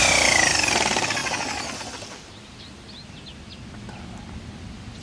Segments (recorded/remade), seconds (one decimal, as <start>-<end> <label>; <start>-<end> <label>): 0.0-5.0 recorded